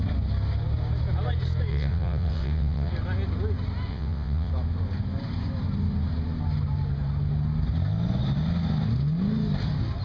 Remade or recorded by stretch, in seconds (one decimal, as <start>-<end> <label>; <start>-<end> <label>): 0.0-1.7 recorded; 1.7-2.9 remade; 2.9-3.9 recorded; 3.9-4.5 remade; 4.5-10.0 recorded